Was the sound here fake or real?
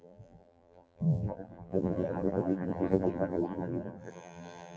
fake